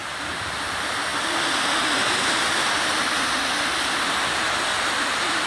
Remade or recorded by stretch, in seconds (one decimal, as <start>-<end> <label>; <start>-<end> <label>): 0.0-0.7 remade; 0.7-5.5 recorded